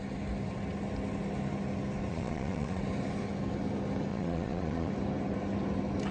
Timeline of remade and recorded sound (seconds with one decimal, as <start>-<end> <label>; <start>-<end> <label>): 0.0-2.1 recorded; 2.1-2.8 remade; 2.8-4.1 recorded; 4.1-4.9 remade; 4.9-6.1 recorded